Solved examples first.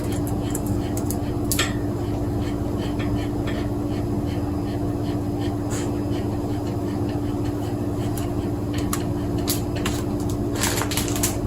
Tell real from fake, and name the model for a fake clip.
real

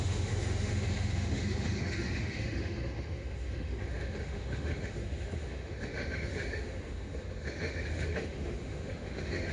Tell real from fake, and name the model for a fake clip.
fake, autoencoder, DAC-VAE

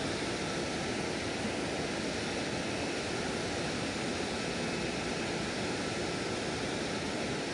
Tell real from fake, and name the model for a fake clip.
real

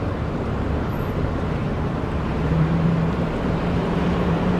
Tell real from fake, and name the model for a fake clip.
fake, vocoder, BigVGAN v2